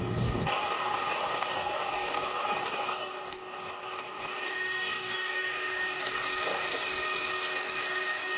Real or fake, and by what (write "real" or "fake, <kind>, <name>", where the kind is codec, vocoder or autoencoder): fake, codec, DAC